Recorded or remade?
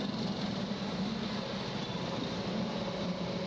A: recorded